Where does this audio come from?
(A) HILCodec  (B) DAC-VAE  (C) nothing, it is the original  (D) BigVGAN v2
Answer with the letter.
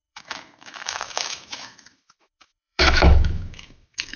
B